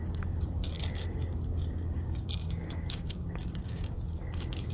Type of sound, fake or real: fake